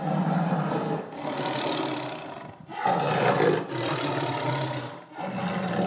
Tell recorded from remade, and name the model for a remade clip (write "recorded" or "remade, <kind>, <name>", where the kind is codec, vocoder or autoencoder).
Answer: recorded